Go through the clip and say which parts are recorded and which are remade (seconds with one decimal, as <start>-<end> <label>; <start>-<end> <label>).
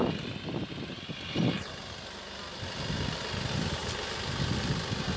0.0-5.2 recorded